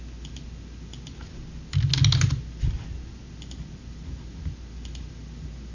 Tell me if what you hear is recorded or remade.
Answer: recorded